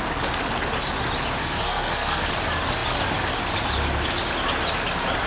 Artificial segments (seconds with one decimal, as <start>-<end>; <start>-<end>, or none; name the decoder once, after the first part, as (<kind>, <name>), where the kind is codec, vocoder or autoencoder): 1.4-2.3 (codec, SNAC)

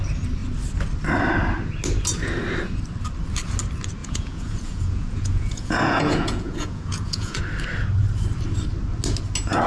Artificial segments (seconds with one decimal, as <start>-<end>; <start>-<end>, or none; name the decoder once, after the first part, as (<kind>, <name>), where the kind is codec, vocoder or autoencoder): 4.0-7.4 (vocoder, Vocos)

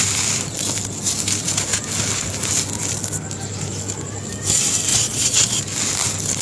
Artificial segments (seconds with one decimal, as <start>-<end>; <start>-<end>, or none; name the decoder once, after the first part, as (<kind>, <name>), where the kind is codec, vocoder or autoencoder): 4.9-5.6 (vocoder, Vocos)

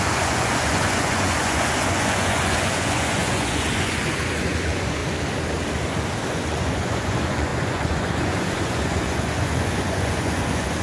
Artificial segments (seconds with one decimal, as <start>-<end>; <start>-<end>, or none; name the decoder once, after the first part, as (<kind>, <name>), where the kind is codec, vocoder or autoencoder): 0.0-5.0 (vocoder, Vocos); 6.3-10.8

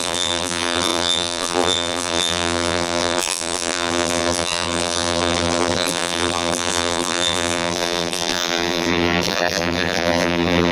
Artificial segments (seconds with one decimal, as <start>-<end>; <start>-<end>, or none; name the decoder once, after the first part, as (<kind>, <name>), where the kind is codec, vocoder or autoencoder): 0.0-10.7 (vocoder, BigVGAN v2)